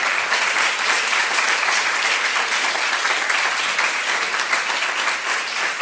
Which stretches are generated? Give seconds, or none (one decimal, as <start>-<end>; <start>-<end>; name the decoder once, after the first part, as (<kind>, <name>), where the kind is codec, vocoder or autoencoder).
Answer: 1.2-1.8 (vocoder, BigVGAN v2)